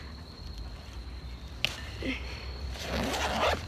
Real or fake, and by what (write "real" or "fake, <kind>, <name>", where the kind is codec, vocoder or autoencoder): real